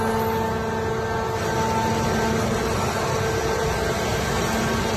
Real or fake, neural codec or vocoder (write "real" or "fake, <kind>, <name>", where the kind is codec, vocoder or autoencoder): real